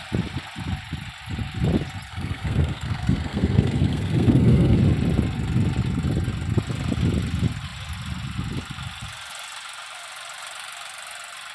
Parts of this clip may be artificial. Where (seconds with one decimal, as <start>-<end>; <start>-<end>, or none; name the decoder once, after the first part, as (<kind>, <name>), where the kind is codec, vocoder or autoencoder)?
2.1-4.8 (codec, SNAC)